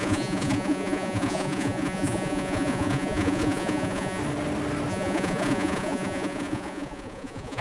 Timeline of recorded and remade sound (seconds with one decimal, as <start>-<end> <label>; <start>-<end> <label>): 0.0-4.2 remade; 4.2-4.9 recorded; 4.9-7.6 remade